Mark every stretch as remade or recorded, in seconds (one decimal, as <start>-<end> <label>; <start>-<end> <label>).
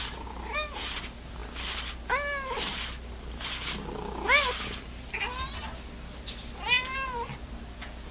0.0-8.1 recorded